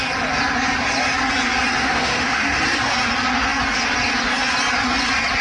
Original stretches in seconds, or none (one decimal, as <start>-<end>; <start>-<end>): 0.0-1.8; 2.6-5.4